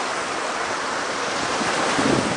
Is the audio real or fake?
real